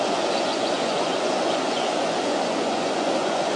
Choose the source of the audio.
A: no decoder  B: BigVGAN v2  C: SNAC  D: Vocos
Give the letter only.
D